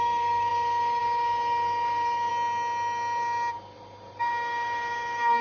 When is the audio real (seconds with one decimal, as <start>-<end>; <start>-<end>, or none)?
2.3-4.2